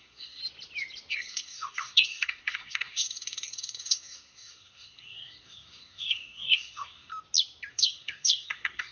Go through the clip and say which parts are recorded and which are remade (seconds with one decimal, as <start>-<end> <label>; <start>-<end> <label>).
0.0-0.4 remade; 0.4-1.1 recorded; 1.1-7.1 remade; 7.1-7.7 recorded; 7.7-8.9 remade